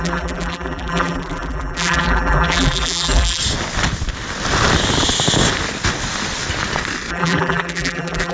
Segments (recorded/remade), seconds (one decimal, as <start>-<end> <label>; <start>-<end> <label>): 0.0-3.4 remade; 3.4-7.1 recorded; 7.1-8.3 remade